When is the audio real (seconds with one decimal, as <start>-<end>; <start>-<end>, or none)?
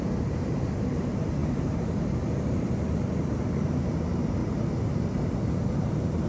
none